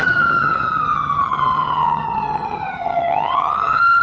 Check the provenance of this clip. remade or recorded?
remade